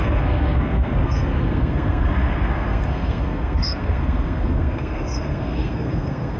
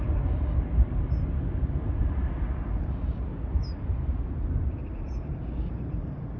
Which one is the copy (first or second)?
first